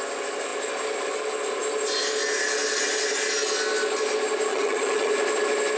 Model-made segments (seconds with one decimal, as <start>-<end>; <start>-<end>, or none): 4.5-5.1